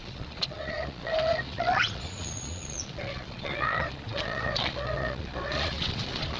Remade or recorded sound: remade